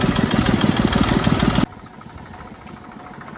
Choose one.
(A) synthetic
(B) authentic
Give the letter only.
B